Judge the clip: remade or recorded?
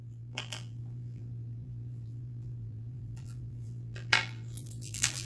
remade